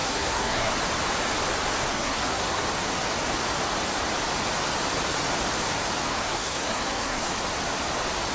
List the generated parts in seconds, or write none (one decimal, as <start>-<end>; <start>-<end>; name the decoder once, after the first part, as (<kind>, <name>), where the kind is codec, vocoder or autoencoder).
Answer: 0.0-0.7 (codec, SNAC); 1.9-2.6; 6.1-7.3